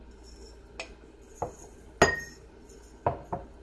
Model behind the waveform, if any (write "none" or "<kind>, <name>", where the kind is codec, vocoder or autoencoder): none